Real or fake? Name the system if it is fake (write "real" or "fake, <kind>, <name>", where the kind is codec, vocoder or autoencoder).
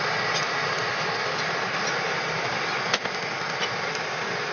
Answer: real